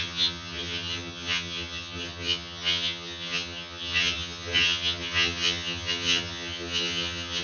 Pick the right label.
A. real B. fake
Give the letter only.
B